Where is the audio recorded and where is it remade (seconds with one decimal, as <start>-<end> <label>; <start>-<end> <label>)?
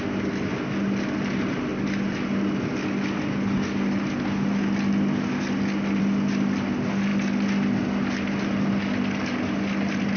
0.0-10.2 recorded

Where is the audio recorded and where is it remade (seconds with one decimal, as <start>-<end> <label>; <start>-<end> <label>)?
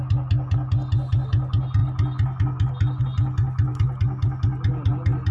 0.0-5.3 recorded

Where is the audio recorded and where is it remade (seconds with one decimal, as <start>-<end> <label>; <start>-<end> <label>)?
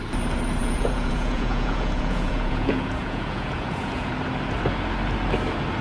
0.0-0.6 recorded; 0.6-4.1 remade; 4.1-5.8 recorded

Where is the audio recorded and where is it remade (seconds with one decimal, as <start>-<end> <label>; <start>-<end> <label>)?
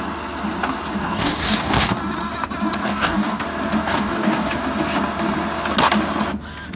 0.0-1.0 recorded; 1.0-2.0 remade; 2.0-2.8 recorded; 2.8-3.4 remade; 3.4-3.8 recorded; 3.8-4.6 remade; 4.6-6.8 recorded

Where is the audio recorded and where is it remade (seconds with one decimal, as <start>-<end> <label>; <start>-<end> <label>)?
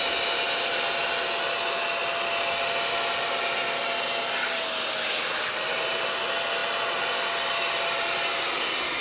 0.0-9.0 recorded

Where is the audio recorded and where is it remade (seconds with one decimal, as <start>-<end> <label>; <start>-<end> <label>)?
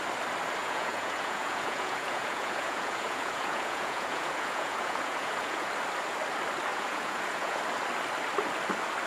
0.0-0.6 recorded; 0.6-5.7 remade; 5.7-6.7 recorded; 6.7-7.6 remade; 7.6-9.1 recorded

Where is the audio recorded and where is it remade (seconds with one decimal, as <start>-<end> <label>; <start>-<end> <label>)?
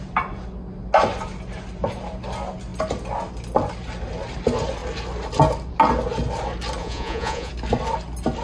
0.0-6.8 recorded; 6.8-7.5 remade; 7.5-8.4 recorded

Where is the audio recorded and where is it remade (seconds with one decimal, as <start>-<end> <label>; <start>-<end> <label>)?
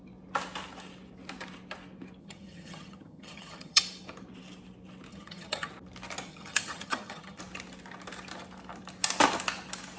0.0-2.2 recorded; 2.2-3.8 remade; 3.8-5.1 recorded; 5.1-5.7 remade; 5.7-6.3 recorded; 6.3-7.4 remade; 7.4-10.0 recorded